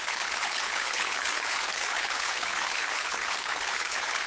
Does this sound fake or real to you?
fake